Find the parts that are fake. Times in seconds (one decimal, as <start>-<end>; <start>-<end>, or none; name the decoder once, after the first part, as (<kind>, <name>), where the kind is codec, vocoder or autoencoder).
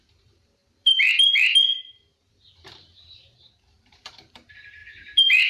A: 0.0-5.5 (vocoder, BigVGAN v2)